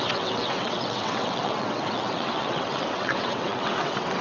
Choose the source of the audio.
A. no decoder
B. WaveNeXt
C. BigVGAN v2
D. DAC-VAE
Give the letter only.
B